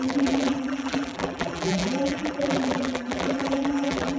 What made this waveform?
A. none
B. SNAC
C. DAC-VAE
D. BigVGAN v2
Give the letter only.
D